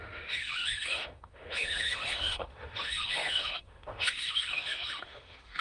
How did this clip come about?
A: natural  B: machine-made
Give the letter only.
B